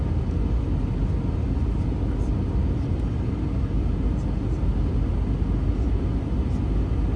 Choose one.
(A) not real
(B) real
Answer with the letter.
B